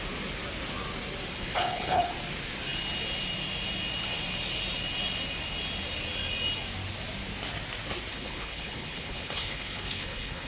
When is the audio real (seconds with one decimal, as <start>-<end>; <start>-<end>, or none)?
0.0-1.3; 2.1-8.1